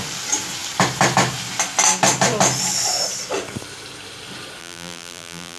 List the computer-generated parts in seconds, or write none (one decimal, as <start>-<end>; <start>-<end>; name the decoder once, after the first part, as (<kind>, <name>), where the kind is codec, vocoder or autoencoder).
4.6-5.6 (vocoder, BigVGAN v2)